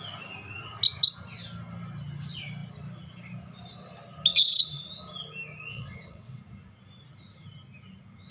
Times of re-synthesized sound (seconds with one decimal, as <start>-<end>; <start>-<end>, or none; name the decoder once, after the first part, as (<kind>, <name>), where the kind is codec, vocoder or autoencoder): 4.3-4.9 (vocoder, WaveNeXt); 5.7-6.4